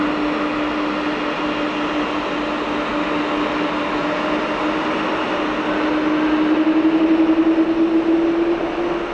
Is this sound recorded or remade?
recorded